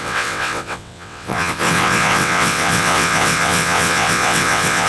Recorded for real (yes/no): no